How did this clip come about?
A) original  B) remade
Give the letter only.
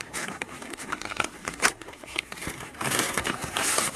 B